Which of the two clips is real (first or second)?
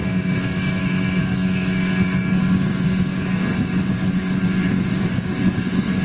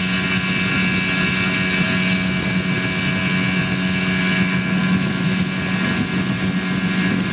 second